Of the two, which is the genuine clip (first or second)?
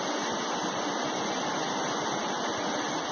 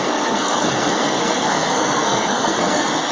first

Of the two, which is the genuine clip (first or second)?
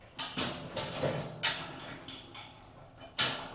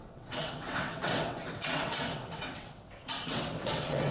first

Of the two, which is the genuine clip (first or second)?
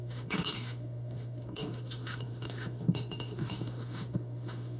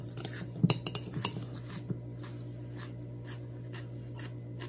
second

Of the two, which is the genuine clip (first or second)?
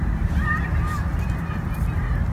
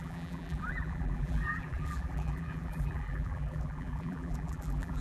first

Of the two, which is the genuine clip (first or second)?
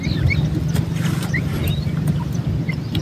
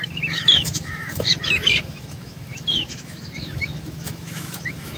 first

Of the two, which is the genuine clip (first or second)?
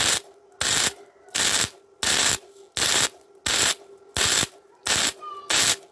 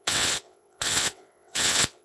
first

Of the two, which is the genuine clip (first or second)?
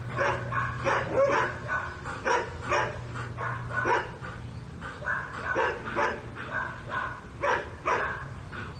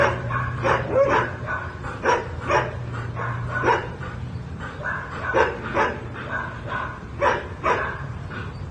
first